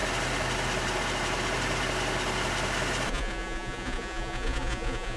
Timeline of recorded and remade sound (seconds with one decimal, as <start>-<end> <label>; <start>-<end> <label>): 0.0-3.1 recorded; 3.1-5.2 remade